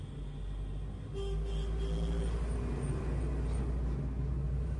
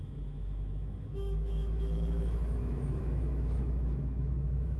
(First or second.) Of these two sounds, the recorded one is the first